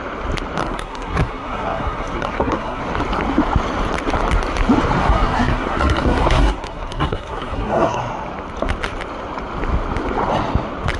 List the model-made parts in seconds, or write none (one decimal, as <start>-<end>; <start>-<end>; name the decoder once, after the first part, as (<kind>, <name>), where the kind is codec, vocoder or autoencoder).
0.6-2.8 (codec, SNAC); 5.0-8.0

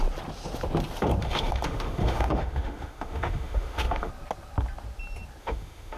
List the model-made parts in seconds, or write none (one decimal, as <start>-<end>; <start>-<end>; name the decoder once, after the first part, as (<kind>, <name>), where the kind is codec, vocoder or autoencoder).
1.2-4.1 (autoencoder, DAC-VAE); 5.4-6.0